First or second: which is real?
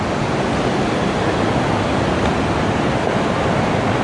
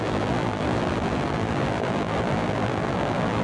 first